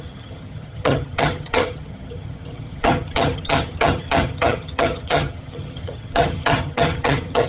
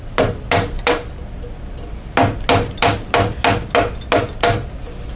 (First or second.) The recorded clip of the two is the second